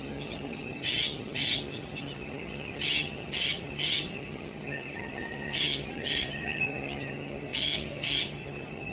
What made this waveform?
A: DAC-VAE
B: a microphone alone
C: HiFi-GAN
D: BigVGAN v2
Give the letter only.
C